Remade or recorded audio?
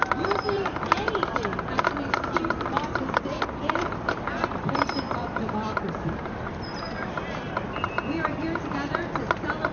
remade